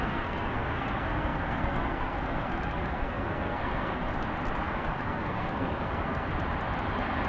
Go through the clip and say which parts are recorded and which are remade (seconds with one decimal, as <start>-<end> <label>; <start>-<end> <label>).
0.0-4.0 remade; 4.0-4.6 recorded; 4.6-6.3 remade; 6.3-7.3 recorded